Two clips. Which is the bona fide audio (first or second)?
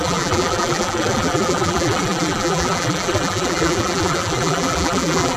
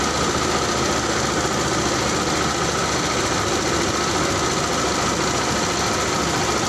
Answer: second